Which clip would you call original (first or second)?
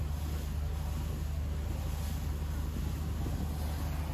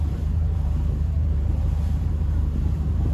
first